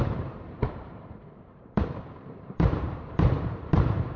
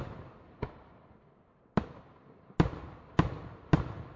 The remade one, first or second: first